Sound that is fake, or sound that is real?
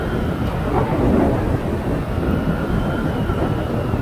real